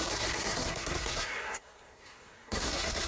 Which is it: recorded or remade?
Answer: remade